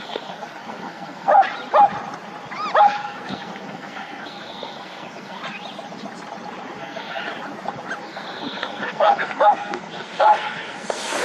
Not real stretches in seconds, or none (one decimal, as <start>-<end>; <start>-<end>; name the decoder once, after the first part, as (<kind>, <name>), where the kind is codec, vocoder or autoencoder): 0.0-1.3 (codec, SNAC); 2.8-5.4; 6.8-7.2; 8.0-11.2